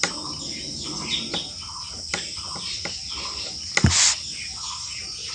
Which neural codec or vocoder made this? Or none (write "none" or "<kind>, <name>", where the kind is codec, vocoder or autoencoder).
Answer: none